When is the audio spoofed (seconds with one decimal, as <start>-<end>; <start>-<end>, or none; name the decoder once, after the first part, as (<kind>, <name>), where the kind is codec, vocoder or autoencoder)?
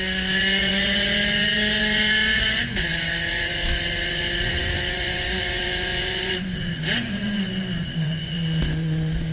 0.0-9.3 (vocoder, Vocos)